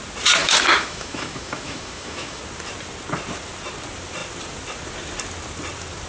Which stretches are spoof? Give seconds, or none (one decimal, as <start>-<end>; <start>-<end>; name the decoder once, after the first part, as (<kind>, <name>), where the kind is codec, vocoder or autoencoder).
0.4-2.4 (autoencoder, DAC-VAE)